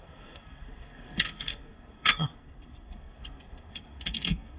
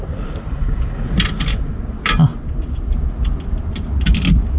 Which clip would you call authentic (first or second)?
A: second